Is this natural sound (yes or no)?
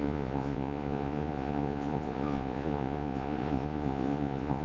no